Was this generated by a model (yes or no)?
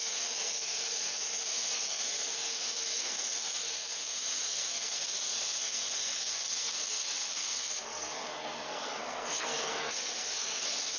yes